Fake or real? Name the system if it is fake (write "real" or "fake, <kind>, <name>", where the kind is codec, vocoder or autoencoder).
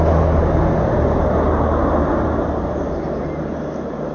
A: real